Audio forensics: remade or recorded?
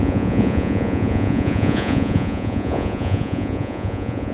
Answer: remade